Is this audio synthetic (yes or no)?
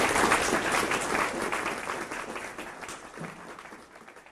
no